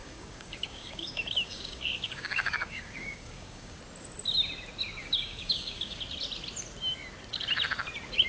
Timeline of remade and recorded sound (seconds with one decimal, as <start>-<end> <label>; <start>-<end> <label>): 0.0-3.8 remade; 3.8-5.0 recorded; 5.0-6.0 remade; 6.0-8.3 recorded